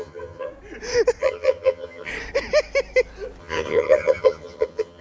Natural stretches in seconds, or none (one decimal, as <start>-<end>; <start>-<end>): 0.5-1.2; 2.1-3.4